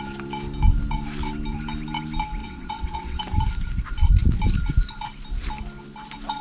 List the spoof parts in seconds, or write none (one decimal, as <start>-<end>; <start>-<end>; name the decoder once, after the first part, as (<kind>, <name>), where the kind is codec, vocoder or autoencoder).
2.4-3.2 (vocoder, WaveNeXt)